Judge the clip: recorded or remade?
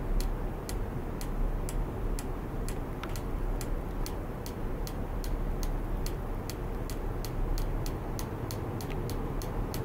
recorded